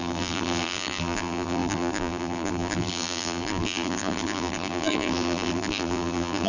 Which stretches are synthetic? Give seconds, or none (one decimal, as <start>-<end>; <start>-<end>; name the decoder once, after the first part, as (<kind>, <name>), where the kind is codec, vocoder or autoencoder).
0.0-6.5 (vocoder, BigVGAN v2)